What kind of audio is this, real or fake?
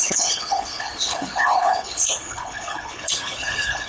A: fake